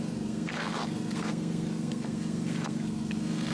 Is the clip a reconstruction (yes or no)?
yes